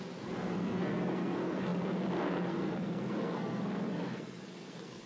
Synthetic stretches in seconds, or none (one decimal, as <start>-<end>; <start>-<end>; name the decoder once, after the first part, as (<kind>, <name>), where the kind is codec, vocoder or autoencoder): 0.0-5.1 (codec, SNAC)